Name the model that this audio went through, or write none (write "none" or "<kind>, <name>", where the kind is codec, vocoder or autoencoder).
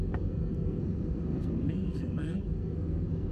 codec, SNAC